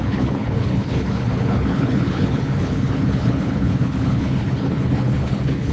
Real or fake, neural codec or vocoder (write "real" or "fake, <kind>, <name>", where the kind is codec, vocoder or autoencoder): fake, codec, HILCodec